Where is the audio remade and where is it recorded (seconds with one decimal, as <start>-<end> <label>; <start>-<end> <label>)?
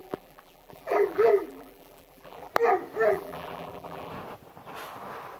0.0-2.5 remade; 2.5-3.1 recorded; 3.1-4.1 remade; 4.1-5.4 recorded